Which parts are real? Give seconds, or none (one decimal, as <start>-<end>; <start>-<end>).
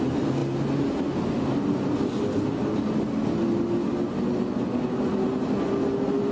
0.0-6.3